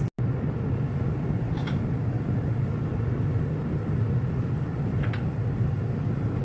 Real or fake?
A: real